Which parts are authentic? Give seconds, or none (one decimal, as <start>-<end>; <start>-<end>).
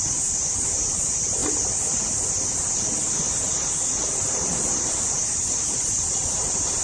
1.4-3.6